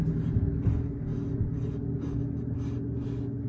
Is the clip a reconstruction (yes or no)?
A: no